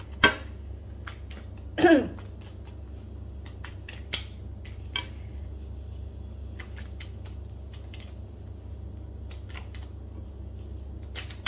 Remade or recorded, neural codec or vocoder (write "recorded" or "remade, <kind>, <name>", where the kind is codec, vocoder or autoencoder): recorded